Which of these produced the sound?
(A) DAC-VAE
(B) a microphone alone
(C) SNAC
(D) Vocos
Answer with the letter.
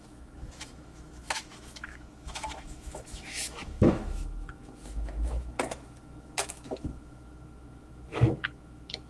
A